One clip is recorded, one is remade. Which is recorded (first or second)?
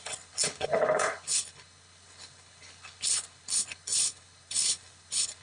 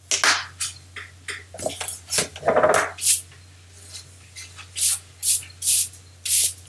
second